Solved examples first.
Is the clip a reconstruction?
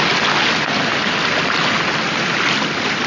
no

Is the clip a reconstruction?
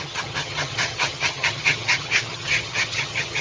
yes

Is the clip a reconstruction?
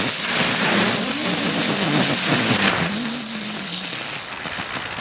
no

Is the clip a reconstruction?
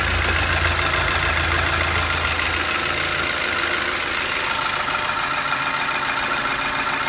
no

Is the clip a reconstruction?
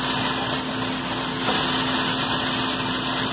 no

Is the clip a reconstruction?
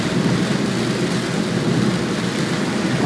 no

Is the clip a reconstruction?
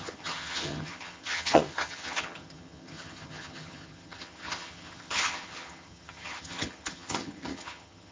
yes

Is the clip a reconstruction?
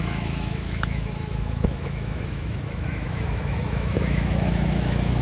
yes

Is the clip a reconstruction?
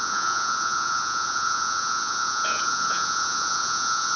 yes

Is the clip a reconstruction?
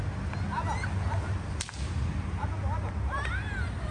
no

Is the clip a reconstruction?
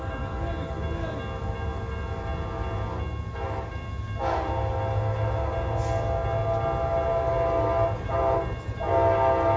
no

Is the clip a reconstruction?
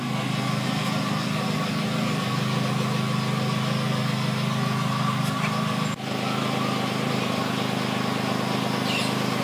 no